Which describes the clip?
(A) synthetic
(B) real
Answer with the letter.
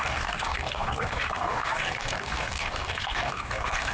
A